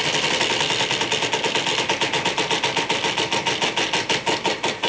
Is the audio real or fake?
real